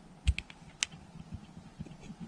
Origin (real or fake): real